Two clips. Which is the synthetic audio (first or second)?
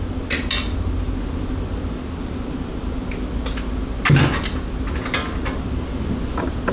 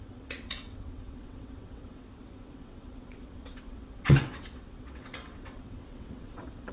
second